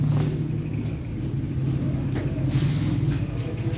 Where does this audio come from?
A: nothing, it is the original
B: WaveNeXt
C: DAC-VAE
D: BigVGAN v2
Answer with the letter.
A